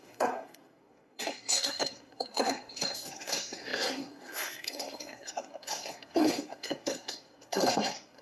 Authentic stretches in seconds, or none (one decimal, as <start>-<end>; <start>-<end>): none